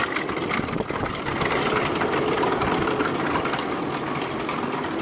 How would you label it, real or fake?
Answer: real